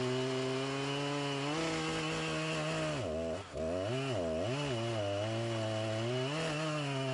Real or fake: real